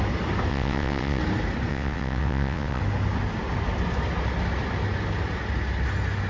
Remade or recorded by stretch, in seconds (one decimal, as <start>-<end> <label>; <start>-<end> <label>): 0.0-0.5 recorded; 0.5-1.2 remade; 1.2-1.7 recorded; 1.7-2.8 remade; 2.8-6.3 recorded